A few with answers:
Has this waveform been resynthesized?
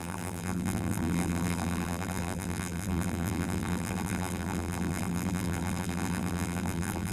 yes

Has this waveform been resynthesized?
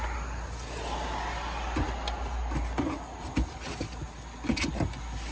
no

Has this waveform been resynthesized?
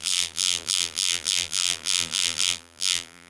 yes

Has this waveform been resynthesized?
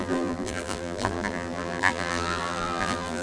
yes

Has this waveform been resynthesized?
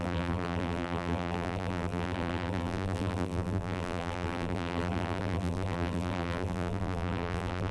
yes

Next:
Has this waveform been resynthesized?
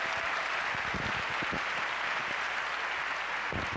no